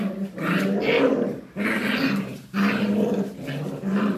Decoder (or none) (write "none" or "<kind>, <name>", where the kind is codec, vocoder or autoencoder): none